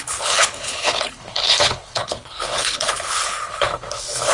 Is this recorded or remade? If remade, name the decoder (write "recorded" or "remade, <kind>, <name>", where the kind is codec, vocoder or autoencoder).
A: remade, codec, HILCodec